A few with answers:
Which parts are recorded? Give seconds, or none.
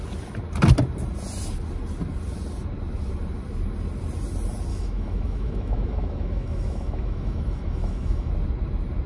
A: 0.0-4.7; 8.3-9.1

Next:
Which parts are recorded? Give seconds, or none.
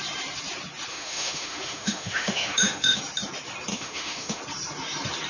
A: 0.0-0.9; 3.0-3.7; 4.4-5.3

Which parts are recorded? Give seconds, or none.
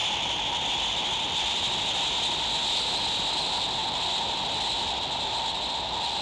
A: 0.0-6.2